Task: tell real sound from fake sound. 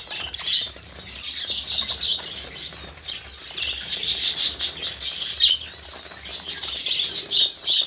real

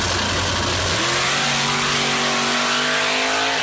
real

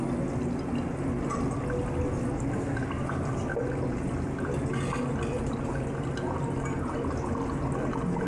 real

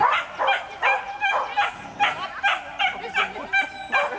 real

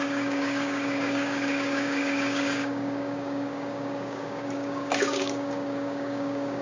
fake